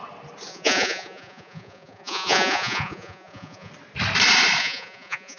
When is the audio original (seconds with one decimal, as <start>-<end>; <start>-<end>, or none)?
0.0-0.5; 3.7-4.6